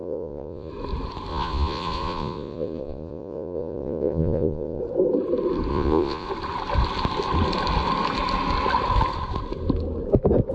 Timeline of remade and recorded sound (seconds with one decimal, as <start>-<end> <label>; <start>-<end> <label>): 0.0-0.7 remade; 0.7-1.3 recorded; 1.3-4.8 remade; 4.8-5.7 recorded; 5.7-6.3 remade; 6.3-10.5 recorded